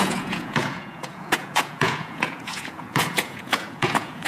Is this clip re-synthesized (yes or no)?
yes